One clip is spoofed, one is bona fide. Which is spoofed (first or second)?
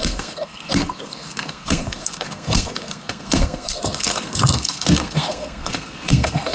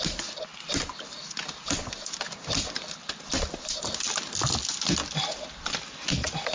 first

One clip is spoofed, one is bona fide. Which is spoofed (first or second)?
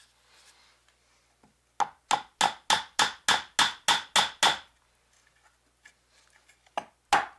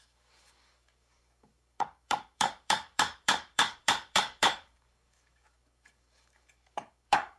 second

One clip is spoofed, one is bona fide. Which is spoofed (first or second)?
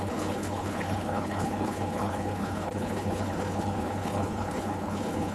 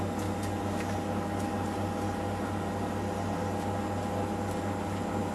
first